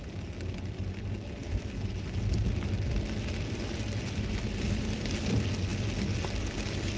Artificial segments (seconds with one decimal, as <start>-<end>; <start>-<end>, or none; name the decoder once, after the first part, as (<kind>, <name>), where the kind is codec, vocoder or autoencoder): none